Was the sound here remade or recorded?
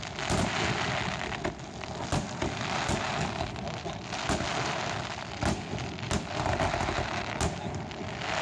recorded